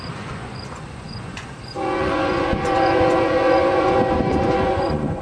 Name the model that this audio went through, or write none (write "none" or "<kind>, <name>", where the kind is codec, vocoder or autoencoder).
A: vocoder, Vocos